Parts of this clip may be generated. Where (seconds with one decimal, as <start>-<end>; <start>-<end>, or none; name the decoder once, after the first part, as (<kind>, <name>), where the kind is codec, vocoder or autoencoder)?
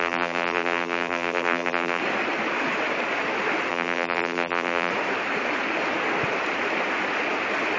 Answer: 0.0-2.0 (vocoder, BigVGAN v2); 3.7-4.9